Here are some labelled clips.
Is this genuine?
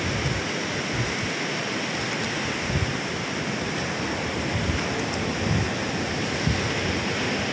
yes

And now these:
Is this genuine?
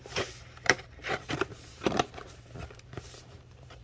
no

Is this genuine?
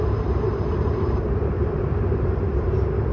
no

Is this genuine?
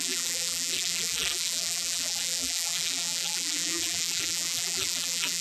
no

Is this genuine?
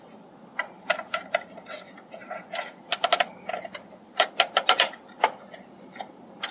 yes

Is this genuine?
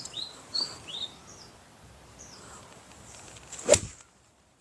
yes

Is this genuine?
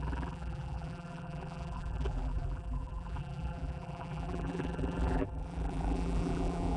no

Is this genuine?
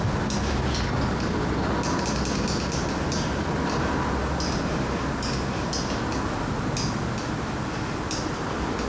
yes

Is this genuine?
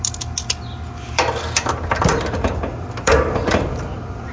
yes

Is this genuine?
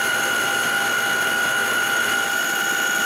yes